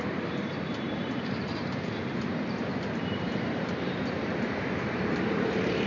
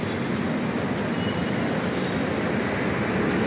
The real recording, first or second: second